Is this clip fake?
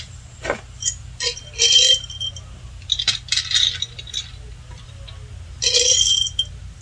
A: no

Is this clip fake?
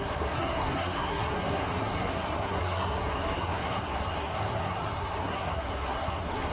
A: yes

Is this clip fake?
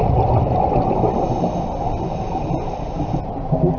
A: no